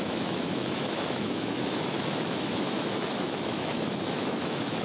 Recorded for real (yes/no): no